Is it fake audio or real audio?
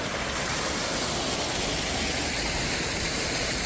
real